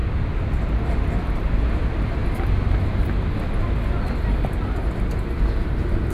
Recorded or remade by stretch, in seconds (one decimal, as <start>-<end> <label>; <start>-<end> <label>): 0.0-6.1 recorded